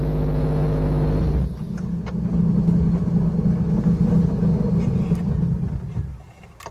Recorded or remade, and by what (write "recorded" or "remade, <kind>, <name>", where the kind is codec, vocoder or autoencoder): recorded